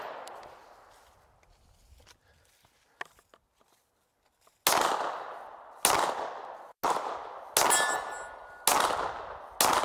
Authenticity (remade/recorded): recorded